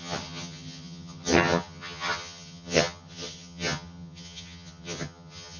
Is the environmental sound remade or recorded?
remade